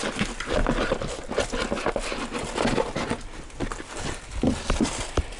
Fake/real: real